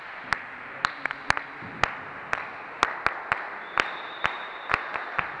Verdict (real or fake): real